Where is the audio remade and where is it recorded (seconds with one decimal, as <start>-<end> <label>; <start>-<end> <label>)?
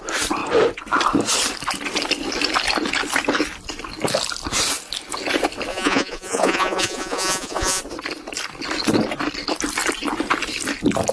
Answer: 0.0-5.7 recorded; 5.7-7.8 remade; 7.8-11.1 recorded